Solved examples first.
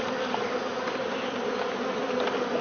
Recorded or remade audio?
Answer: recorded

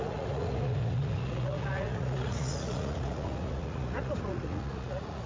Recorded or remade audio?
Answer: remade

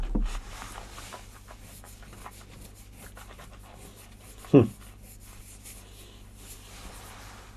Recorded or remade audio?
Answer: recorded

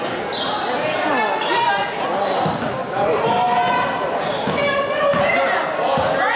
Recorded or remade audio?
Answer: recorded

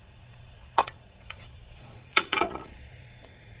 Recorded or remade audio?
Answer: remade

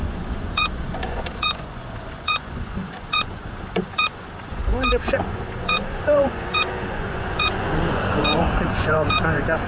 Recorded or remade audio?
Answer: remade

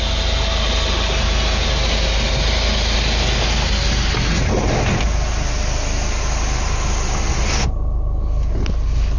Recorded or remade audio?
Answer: recorded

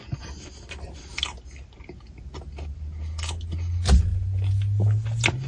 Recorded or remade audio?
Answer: recorded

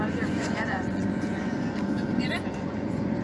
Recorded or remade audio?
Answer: remade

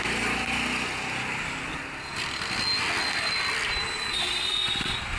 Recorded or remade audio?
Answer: recorded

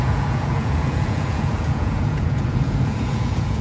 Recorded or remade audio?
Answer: remade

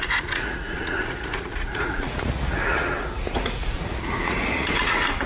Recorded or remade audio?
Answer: remade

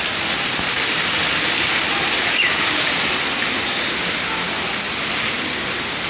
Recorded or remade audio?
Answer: recorded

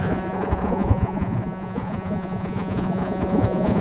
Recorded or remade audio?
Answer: remade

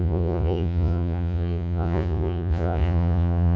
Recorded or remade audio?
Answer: remade